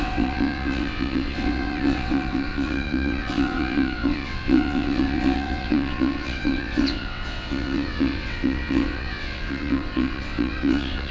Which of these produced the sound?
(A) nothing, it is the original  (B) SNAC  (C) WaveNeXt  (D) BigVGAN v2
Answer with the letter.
C